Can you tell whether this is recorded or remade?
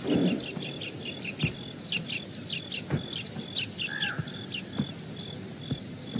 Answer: recorded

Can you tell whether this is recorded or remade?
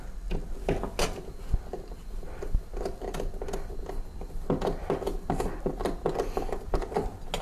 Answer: recorded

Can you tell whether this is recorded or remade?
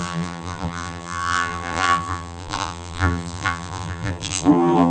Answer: remade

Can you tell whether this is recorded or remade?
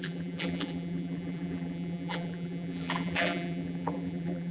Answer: remade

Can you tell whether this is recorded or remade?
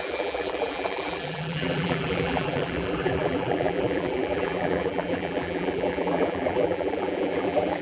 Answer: remade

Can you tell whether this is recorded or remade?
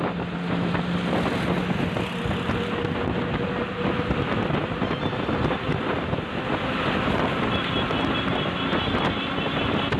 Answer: recorded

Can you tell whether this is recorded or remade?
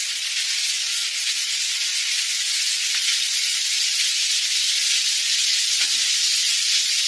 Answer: recorded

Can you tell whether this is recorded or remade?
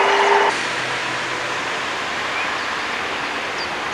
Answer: recorded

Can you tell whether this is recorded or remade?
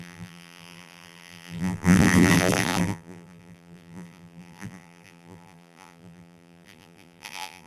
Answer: remade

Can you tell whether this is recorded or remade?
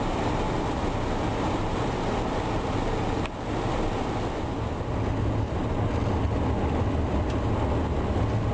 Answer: recorded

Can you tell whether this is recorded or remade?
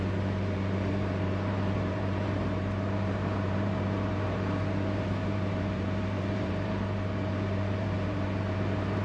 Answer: remade